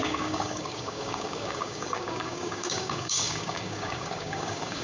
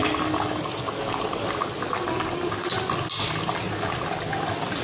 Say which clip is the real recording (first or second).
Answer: second